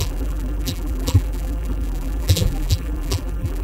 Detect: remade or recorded remade